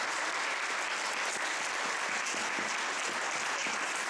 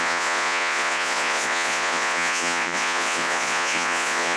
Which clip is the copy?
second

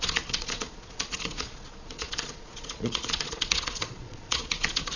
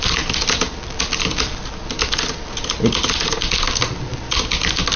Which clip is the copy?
first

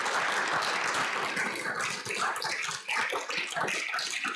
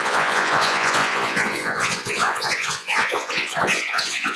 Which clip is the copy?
second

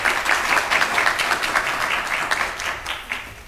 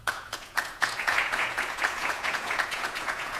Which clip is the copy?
second